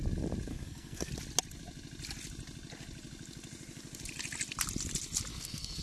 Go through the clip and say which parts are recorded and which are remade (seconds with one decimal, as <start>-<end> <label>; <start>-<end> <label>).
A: 0.0-0.5 recorded; 0.5-1.1 remade; 1.1-5.3 recorded; 5.3-5.8 remade